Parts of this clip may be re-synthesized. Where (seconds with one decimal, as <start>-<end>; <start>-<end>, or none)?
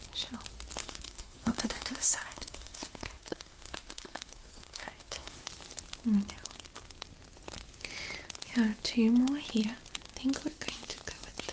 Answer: 0.8-5.4